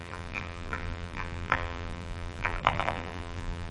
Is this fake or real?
fake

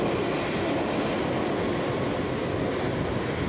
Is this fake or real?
real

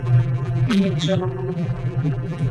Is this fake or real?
fake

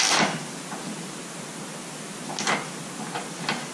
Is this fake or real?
real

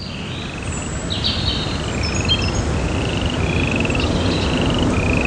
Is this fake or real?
real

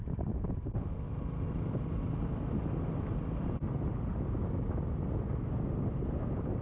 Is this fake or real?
real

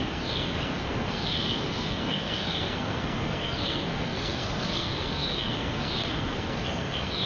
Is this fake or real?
fake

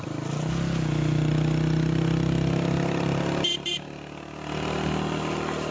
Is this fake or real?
real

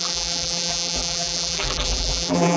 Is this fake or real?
fake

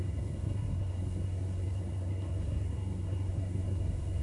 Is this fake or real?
fake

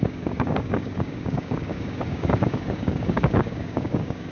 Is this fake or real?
fake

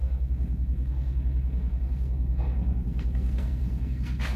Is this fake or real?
fake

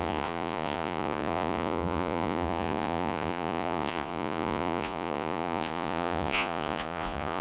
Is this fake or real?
fake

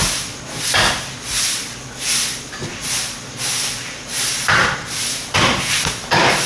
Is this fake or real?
real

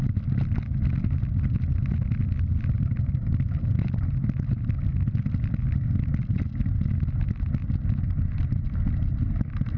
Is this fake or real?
real